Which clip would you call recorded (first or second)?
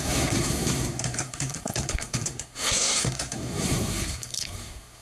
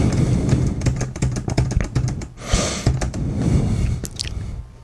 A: second